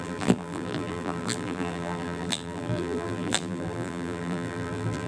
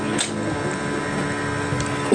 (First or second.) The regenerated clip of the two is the first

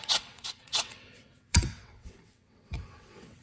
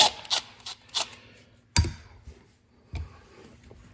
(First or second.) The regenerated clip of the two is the first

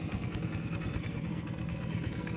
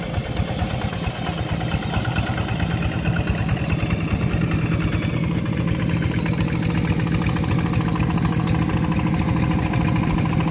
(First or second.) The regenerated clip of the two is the first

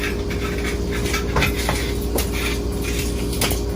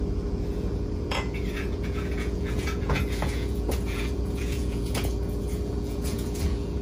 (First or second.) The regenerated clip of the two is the second